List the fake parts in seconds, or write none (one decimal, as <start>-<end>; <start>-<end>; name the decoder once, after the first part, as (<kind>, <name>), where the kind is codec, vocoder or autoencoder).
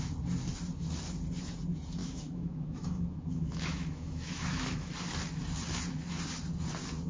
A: 2.0-4.9 (autoencoder, DAC-VAE)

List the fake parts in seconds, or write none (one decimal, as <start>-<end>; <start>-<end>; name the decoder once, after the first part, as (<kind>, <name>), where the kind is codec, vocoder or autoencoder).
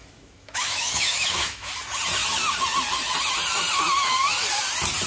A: 0.0-1.7 (autoencoder, DAC-VAE)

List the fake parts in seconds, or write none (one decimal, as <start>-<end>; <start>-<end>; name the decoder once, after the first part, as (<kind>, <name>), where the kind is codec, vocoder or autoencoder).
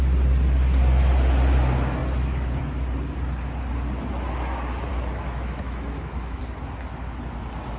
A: 4.9-6.4 (autoencoder, DAC-VAE)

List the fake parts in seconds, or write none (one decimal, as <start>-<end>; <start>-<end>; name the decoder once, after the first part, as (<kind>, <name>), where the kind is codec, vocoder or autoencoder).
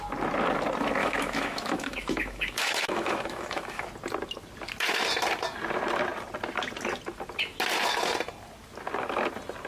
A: 1.0-3.9 (autoencoder, DAC-VAE)